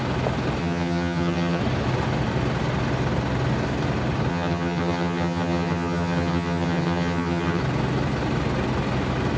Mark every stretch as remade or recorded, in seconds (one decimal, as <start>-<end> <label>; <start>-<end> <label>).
0.0-0.6 recorded; 0.6-1.6 remade; 1.6-4.3 recorded; 4.3-7.6 remade; 7.6-9.4 recorded